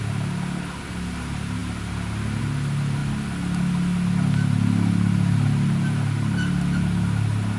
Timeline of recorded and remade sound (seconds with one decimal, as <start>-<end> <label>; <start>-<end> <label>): 0.0-7.6 recorded